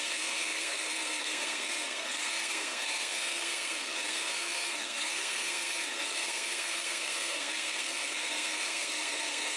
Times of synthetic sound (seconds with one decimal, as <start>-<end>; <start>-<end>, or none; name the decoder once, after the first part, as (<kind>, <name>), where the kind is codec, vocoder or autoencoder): 0.0-9.6 (codec, SNAC)